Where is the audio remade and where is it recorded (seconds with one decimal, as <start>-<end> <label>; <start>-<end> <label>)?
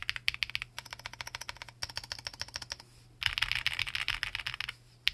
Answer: 0.0-5.1 recorded